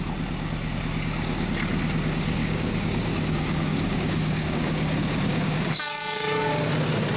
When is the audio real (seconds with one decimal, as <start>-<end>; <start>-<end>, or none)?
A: 0.0-2.4; 6.7-7.2